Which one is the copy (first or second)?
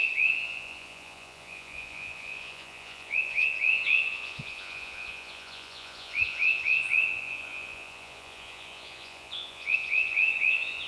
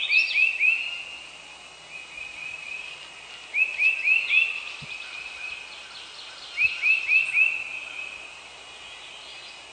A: first